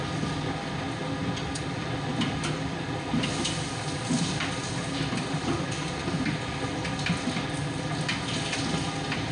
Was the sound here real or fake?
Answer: real